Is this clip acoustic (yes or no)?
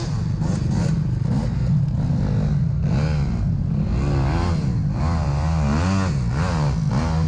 yes